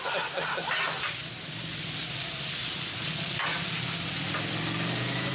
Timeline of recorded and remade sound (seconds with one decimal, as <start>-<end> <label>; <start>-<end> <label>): 0.0-2.6 recorded; 2.6-3.1 remade; 3.1-5.3 recorded